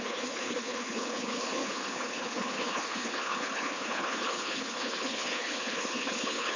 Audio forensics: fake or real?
fake